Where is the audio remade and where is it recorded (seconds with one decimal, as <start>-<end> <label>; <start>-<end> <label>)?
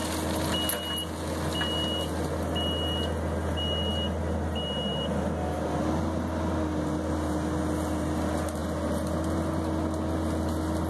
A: 0.0-10.9 recorded